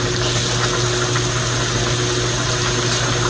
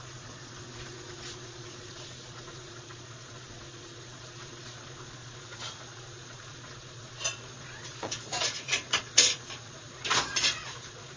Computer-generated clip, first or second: second